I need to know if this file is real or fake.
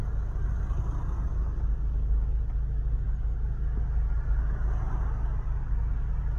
real